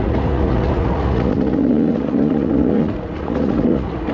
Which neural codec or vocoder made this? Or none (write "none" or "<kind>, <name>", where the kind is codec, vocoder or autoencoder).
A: vocoder, Vocos